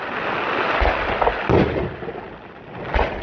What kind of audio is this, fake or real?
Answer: real